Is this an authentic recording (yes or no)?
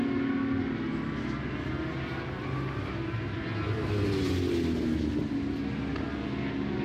yes